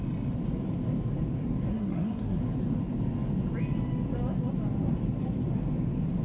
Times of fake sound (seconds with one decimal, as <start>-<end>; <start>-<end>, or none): 1.7-2.4